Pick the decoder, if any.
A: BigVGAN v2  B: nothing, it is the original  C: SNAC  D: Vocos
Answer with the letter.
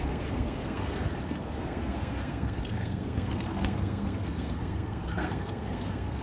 C